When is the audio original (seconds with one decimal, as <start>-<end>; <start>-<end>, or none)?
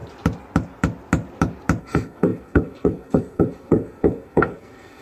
0.0-1.8